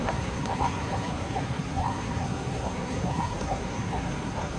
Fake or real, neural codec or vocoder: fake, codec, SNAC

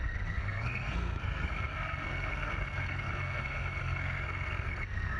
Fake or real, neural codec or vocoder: fake, codec, SNAC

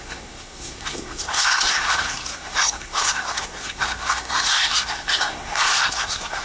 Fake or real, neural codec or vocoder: fake, codec, SNAC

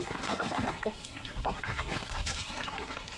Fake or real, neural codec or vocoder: fake, codec, SNAC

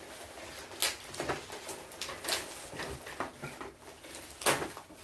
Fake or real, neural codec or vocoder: real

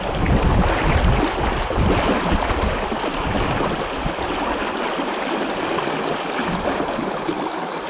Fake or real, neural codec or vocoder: real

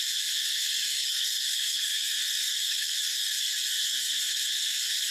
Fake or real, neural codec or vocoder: fake, codec, SNAC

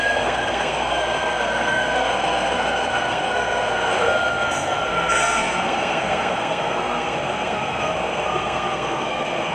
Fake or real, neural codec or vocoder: fake, codec, SNAC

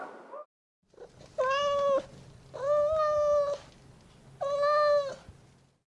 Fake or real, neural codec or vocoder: real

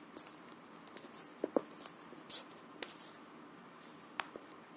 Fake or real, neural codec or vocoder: real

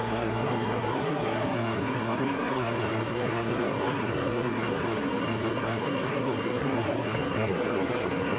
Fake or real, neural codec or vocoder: fake, codec, SNAC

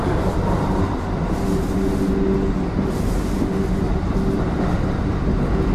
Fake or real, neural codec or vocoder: real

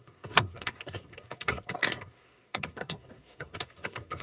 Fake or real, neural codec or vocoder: fake, codec, SNAC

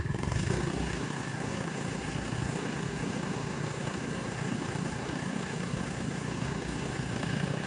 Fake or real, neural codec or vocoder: fake, codec, SNAC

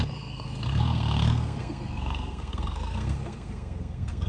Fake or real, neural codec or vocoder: fake, codec, SNAC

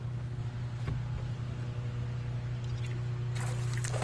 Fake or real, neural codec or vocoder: real